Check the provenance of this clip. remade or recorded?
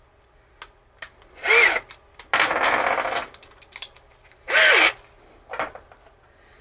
recorded